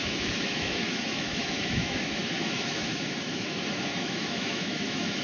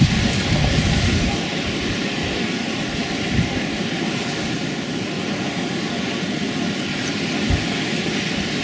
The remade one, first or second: first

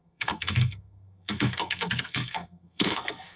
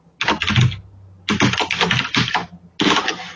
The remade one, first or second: first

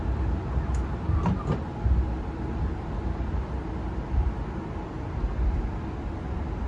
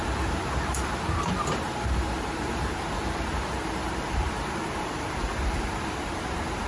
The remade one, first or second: second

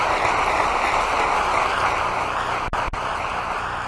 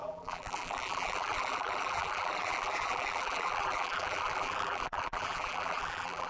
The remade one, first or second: second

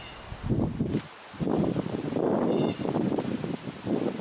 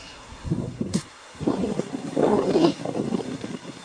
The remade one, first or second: second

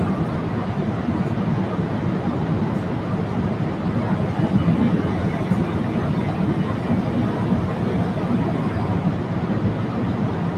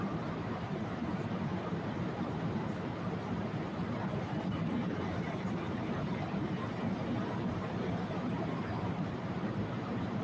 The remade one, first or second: second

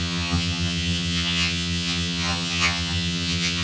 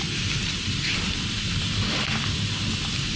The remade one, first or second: first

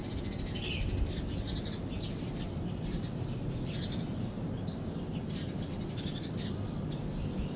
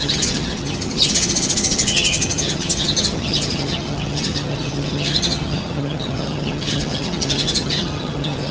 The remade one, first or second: second